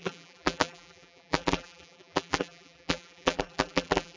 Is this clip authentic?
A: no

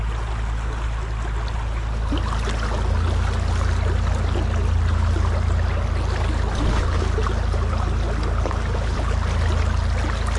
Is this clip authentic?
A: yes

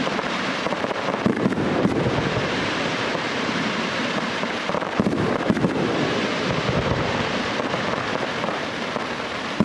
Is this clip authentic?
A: no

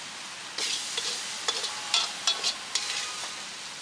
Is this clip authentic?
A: yes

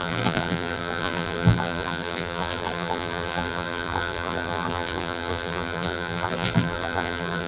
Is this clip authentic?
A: no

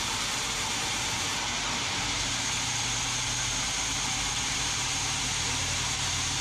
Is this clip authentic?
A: no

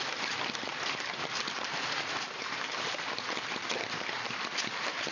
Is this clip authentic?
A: no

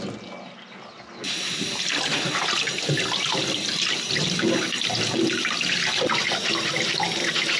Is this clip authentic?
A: yes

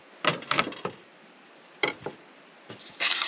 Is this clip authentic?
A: yes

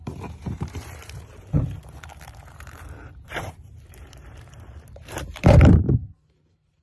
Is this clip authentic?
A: no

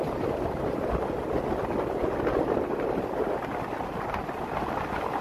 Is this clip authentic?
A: yes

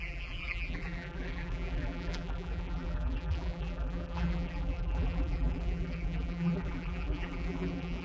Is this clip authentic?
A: no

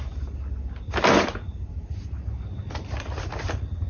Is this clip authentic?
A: yes